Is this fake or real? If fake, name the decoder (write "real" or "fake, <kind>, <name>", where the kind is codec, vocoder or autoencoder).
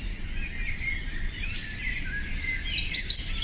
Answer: real